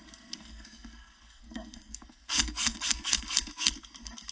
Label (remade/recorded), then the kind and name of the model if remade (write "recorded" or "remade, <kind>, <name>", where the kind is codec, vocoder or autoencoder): remade, codec, SNAC